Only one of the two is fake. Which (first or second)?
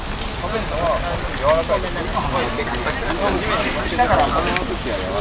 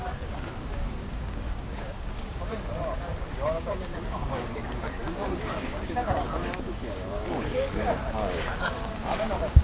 second